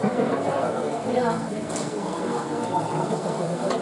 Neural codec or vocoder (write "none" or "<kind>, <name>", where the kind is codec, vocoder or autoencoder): codec, SNAC